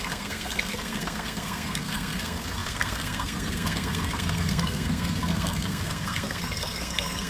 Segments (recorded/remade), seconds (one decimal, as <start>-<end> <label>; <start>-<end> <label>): 0.0-7.3 remade